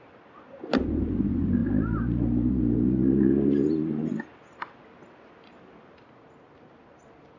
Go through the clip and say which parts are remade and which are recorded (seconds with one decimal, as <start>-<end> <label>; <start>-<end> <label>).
0.0-7.4 recorded